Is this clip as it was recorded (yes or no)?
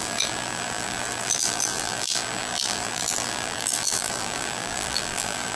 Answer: no